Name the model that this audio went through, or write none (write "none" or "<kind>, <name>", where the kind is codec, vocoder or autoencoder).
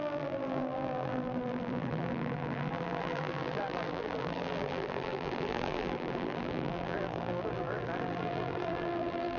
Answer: vocoder, BigVGAN v2